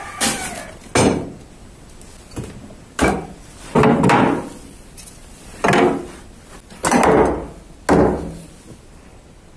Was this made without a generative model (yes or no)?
yes